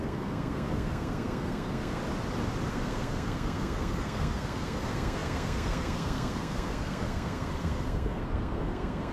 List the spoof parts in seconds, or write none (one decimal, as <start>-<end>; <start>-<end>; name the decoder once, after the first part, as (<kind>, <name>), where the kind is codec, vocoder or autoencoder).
0.0-2.0 (codec, SNAC); 2.7-9.1